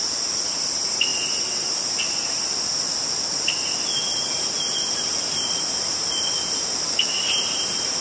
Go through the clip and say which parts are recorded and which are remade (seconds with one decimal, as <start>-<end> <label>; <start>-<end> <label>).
0.0-8.0 recorded